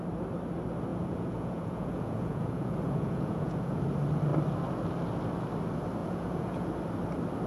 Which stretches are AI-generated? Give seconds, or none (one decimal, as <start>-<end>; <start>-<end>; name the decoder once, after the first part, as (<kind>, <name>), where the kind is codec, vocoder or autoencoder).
0.9-3.8 (vocoder, Vocos); 6.0-6.7